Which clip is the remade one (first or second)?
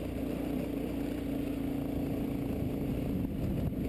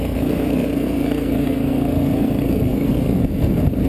second